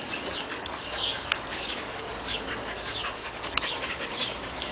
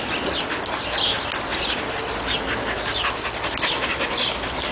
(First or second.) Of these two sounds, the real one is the second